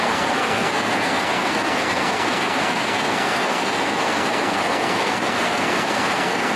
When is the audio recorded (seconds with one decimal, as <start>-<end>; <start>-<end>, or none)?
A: none